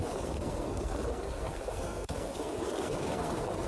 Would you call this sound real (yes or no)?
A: no